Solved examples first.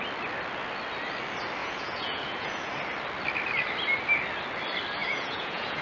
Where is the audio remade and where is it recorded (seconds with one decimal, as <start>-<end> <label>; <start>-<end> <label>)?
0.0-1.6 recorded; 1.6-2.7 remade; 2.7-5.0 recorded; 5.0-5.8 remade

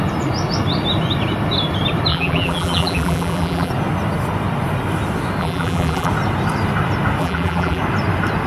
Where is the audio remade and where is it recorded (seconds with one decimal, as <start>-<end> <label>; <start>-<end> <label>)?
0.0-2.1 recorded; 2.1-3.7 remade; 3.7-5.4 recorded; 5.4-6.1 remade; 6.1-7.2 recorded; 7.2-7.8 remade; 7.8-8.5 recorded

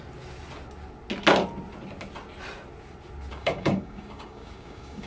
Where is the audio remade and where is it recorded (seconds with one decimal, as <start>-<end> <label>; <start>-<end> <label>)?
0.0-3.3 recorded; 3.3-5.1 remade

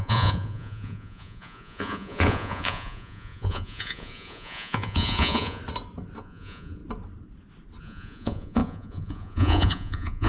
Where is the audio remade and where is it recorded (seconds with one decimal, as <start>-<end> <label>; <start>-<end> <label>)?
0.0-5.6 remade; 5.6-6.2 recorded; 6.2-6.8 remade; 6.8-7.8 recorded; 7.8-10.3 remade

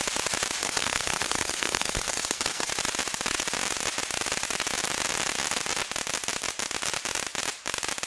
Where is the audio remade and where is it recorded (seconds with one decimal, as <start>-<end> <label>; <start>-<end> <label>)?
0.0-0.6 recorded; 0.6-2.7 remade; 2.7-8.1 recorded